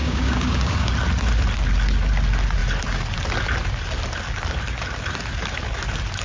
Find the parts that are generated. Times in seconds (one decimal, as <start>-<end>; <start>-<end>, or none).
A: 0.0-0.9